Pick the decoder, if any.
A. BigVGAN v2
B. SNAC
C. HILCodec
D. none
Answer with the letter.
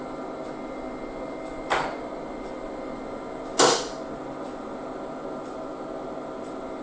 D